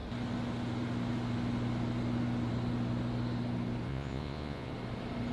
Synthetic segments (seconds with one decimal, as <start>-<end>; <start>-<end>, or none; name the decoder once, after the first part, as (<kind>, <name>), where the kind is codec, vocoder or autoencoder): 3.9-4.7 (vocoder, Vocos)

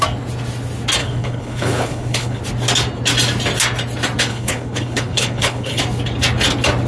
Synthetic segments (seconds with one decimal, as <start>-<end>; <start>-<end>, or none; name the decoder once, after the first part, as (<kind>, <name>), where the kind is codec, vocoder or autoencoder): 1.0-2.4 (codec, HILCodec); 4.3-5.8

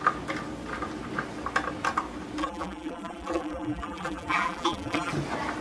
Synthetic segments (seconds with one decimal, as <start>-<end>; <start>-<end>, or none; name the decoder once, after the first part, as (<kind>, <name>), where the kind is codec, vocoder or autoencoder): 2.4-5.1 (vocoder, BigVGAN v2)